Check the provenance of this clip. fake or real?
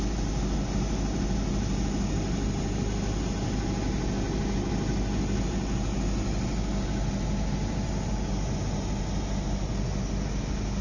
real